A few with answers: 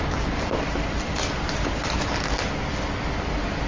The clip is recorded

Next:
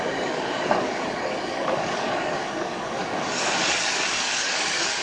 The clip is remade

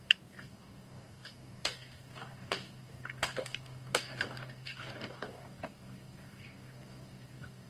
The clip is remade